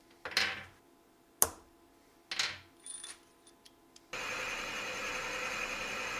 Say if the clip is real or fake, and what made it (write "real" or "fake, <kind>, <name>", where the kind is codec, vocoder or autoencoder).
real